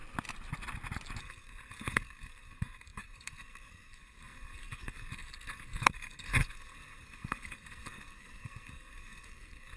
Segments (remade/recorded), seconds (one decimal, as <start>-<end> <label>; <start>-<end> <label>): 0.0-1.2 recorded; 1.2-9.8 remade